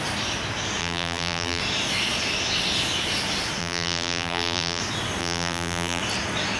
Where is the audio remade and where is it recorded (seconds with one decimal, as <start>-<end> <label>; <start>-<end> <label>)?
0.0-0.8 recorded; 0.8-1.6 remade; 1.6-3.6 recorded; 3.6-4.8 remade; 4.8-5.2 recorded; 5.2-6.0 remade; 6.0-6.6 recorded